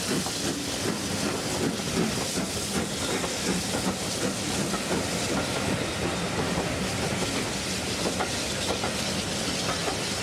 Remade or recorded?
recorded